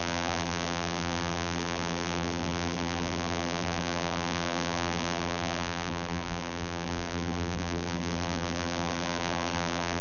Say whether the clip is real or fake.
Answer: fake